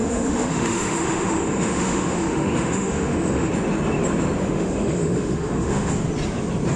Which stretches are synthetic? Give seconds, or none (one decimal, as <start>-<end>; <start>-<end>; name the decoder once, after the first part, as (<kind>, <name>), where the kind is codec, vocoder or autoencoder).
0.0-3.5 (autoencoder, DAC-VAE); 4.4-5.9